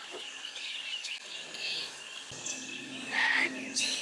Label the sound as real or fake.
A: fake